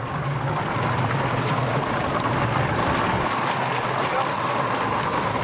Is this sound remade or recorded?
recorded